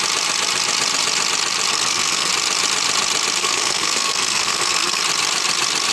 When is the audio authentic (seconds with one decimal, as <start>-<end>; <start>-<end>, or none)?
0.0-1.7; 2.3-3.4; 5.0-5.9